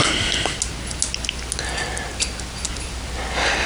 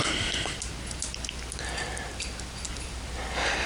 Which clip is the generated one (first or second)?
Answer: second